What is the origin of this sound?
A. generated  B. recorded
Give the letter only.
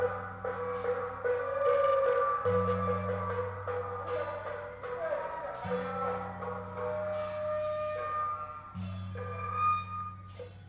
B